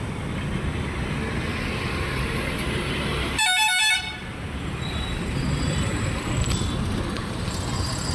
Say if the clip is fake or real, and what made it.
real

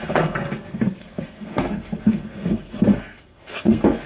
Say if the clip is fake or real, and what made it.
fake, codec, SNAC